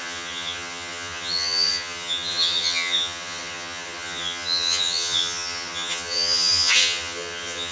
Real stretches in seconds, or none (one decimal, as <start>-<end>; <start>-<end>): none